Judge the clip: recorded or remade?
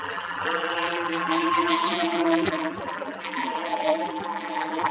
remade